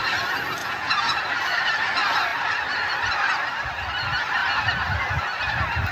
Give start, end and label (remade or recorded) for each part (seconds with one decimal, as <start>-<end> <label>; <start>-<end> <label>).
0.0-0.6 recorded; 0.6-1.2 remade; 1.2-5.9 recorded